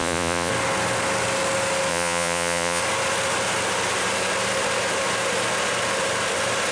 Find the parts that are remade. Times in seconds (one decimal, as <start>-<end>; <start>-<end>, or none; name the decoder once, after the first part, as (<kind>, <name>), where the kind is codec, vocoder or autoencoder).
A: 0.0-0.5 (vocoder, Vocos); 1.9-2.8